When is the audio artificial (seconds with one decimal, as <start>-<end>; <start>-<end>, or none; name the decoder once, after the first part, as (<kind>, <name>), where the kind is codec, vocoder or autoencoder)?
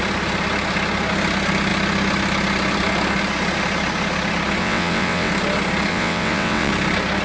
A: 4.6-5.3 (vocoder, WaveNeXt); 5.9-6.7